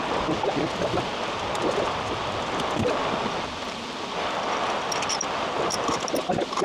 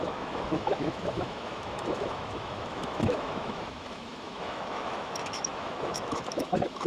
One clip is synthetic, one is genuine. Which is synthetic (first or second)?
second